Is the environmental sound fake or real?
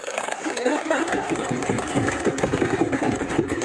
fake